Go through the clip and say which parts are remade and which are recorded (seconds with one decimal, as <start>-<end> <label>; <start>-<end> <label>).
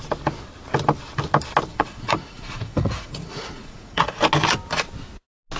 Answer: 0.0-1.7 recorded; 1.7-4.2 remade; 4.2-5.6 recorded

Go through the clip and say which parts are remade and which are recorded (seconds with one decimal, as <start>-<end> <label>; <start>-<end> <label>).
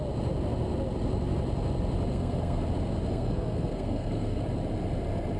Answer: 0.0-2.1 recorded; 2.1-2.6 remade; 2.6-3.1 recorded; 3.1-4.4 remade; 4.4-5.4 recorded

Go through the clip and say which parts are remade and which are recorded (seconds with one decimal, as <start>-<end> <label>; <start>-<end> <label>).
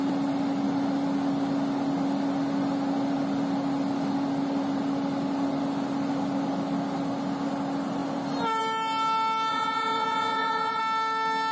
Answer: 0.0-9.5 recorded; 9.5-10.8 remade; 10.8-11.5 recorded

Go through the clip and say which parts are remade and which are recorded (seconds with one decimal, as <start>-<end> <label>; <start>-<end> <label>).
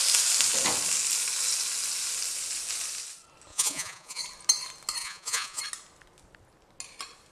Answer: 0.0-3.5 recorded; 3.5-4.2 remade; 4.2-5.0 recorded; 5.0-5.6 remade; 5.6-7.3 recorded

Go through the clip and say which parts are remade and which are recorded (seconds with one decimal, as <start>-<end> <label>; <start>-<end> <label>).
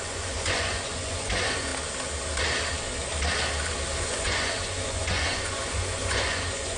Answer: 0.0-1.7 remade; 1.7-4.0 recorded; 4.0-6.8 remade